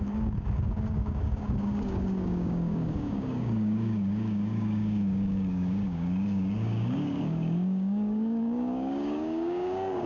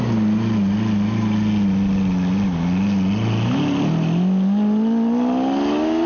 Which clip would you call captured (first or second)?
second